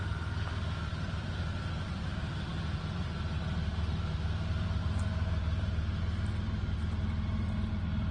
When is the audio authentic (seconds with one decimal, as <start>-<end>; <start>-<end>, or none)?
0.0-8.1